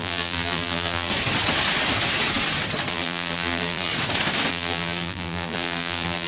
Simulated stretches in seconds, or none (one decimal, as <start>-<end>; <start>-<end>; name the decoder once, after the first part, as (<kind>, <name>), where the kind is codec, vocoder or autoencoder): 0.0-1.1 (vocoder, BigVGAN v2); 2.9-3.9; 4.5-6.3